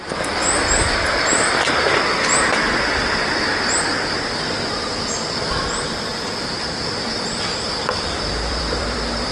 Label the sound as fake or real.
fake